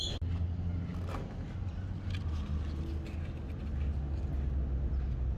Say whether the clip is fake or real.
real